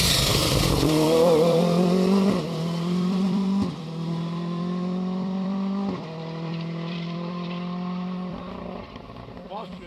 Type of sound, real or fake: fake